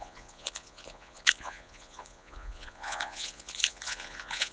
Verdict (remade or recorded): remade